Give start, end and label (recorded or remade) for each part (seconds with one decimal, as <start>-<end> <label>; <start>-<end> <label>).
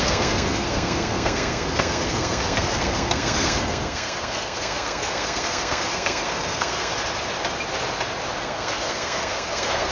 0.0-6.9 remade; 6.9-8.4 recorded; 8.4-9.9 remade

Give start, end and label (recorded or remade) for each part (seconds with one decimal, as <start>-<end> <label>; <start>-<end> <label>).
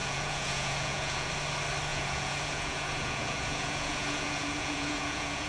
0.0-1.3 remade; 1.3-1.9 recorded; 1.9-5.5 remade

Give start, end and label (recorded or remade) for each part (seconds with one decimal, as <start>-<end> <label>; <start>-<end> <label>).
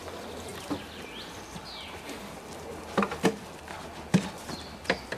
0.0-5.2 recorded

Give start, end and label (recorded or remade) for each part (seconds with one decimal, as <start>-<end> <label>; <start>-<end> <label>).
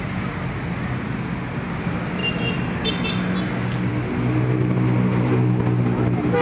0.0-6.4 recorded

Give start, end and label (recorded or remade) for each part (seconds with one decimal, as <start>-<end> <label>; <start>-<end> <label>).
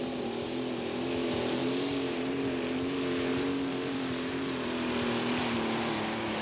0.0-6.4 remade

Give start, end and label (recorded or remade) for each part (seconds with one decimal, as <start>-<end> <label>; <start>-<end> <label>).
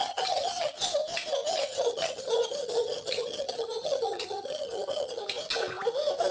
0.0-0.7 remade; 0.7-1.5 recorded; 1.5-5.2 remade; 5.2-6.3 recorded